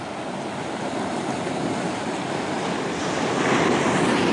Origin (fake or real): real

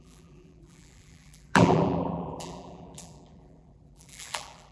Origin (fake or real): fake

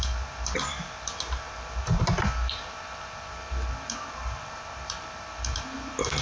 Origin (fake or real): fake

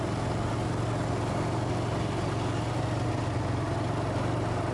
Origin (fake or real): real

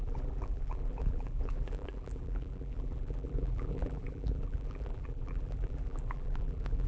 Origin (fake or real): fake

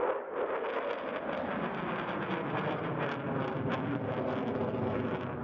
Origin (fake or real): real